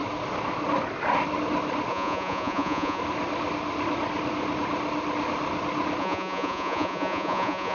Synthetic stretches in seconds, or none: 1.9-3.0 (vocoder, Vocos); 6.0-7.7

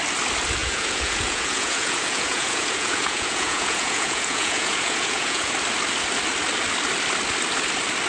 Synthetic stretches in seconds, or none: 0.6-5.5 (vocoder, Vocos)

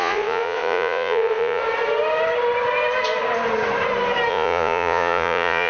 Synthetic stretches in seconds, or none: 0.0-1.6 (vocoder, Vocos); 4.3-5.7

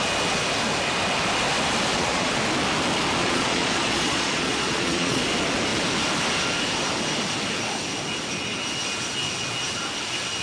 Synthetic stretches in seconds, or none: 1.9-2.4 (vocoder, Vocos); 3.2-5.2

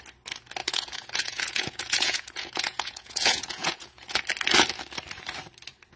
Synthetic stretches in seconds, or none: 0.6-4.2 (vocoder, Vocos)